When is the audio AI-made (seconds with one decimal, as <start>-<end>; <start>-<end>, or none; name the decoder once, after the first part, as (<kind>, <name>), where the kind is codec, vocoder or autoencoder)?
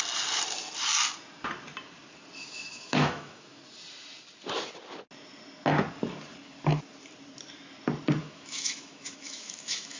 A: 2.4-3.6 (autoencoder, DAC-VAE); 8.2-10.0